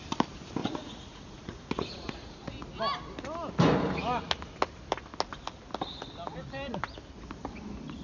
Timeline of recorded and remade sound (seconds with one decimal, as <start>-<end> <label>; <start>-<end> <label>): 0.0-0.6 recorded; 0.6-2.3 remade; 2.3-8.0 recorded